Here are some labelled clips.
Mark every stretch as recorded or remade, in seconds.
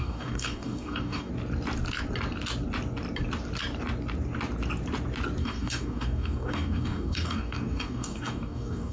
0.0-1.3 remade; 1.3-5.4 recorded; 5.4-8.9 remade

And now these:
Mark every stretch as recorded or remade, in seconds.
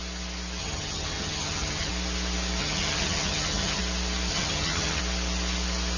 0.0-0.6 recorded; 0.6-1.9 remade; 1.9-2.6 recorded; 2.6-3.8 remade; 3.8-4.3 recorded; 4.3-5.0 remade; 5.0-6.0 recorded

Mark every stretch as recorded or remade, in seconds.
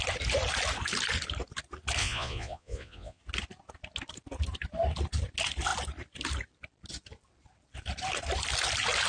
0.0-2.0 recorded; 2.0-3.2 remade; 3.2-9.1 recorded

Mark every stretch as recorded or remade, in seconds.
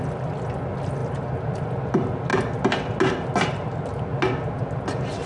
0.0-5.3 recorded